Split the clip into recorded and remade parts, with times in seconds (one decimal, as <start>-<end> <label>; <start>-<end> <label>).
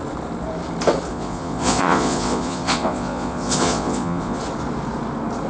0.0-1.1 recorded; 1.1-4.4 remade; 4.4-5.5 recorded